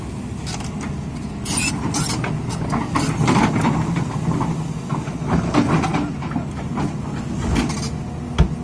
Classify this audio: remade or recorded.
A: recorded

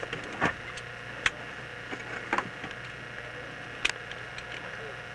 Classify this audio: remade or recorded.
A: recorded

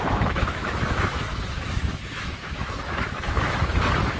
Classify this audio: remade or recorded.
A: remade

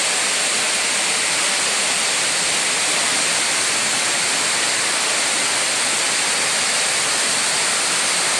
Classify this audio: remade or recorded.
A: recorded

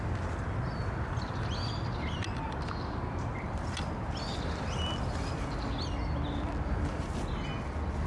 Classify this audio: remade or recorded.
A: recorded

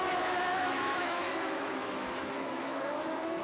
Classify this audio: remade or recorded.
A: remade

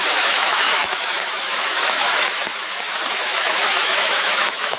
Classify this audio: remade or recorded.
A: remade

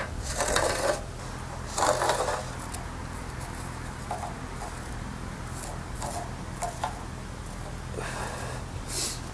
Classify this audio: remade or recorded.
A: recorded